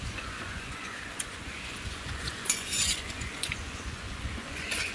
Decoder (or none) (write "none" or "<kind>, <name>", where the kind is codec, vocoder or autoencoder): vocoder, Vocos